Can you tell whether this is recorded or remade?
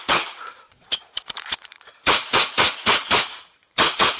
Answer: remade